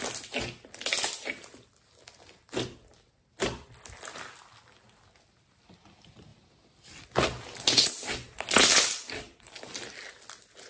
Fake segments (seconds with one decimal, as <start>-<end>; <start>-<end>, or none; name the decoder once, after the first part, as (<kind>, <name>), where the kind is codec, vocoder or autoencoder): none